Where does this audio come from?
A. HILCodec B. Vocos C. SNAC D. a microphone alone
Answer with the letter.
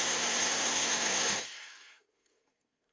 C